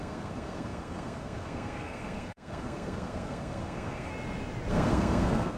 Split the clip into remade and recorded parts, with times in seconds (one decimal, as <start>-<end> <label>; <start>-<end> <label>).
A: 0.0-4.1 remade; 4.1-4.7 recorded; 4.7-5.6 remade